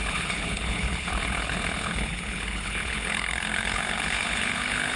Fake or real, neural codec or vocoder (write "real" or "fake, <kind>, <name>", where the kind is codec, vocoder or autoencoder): fake, codec, HILCodec